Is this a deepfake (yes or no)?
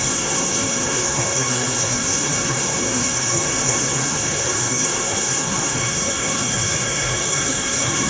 yes